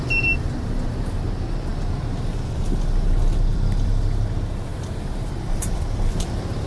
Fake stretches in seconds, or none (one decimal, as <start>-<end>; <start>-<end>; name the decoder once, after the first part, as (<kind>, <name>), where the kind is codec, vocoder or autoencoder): 3.5-4.3 (vocoder, BigVGAN v2); 4.7-6.1